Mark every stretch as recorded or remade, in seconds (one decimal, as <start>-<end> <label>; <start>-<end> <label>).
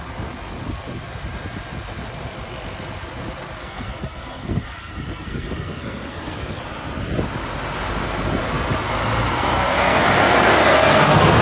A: 0.0-3.6 recorded; 3.6-6.6 remade; 6.6-9.3 recorded; 9.3-11.4 remade